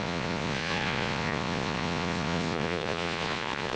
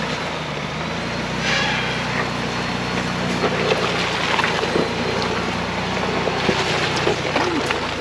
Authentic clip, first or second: second